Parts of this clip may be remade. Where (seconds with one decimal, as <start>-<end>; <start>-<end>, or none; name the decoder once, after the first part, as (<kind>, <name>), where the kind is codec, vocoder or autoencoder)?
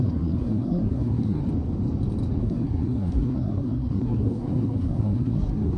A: 0.0-1.4 (codec, SNAC); 2.4-5.8